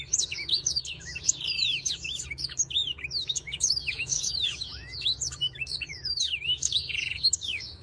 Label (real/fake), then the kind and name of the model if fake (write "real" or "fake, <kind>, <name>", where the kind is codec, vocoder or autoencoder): fake, autoencoder, DAC-VAE